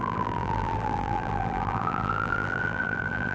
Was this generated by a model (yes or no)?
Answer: yes